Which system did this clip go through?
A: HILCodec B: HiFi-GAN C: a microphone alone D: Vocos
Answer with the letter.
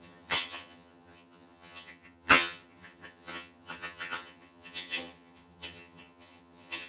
B